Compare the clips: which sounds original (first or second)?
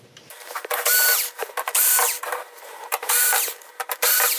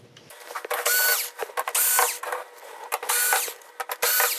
second